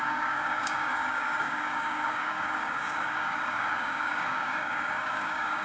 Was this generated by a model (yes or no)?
yes